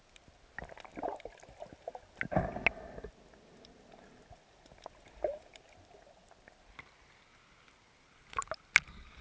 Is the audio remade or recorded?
recorded